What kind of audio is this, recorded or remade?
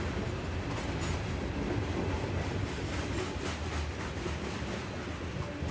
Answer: recorded